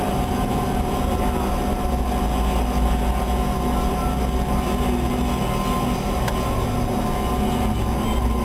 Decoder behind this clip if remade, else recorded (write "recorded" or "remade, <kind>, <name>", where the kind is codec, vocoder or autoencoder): recorded